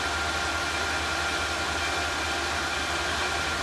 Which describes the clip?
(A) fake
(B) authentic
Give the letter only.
B